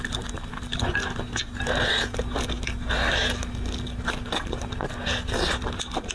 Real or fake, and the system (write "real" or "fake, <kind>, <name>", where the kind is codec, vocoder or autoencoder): real